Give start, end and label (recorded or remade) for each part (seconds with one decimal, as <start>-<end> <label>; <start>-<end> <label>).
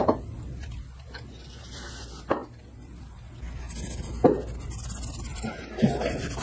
0.0-6.4 recorded